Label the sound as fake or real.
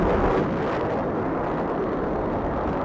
real